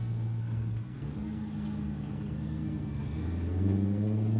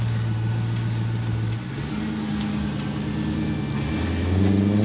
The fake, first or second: first